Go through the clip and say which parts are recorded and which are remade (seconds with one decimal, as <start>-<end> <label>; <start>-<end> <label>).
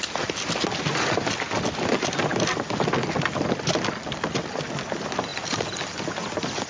0.0-6.7 recorded